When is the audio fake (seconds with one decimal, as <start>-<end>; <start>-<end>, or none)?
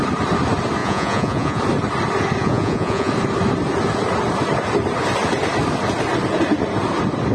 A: 0.8-1.6; 2.4-3.1